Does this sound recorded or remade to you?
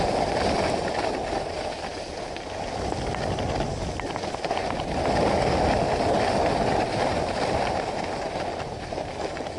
recorded